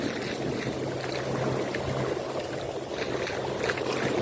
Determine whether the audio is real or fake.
real